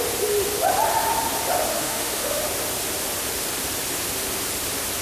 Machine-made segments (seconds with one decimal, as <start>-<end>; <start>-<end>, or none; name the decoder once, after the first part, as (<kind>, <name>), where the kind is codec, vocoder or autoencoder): 1.7-2.4 (autoencoder, DAC-VAE)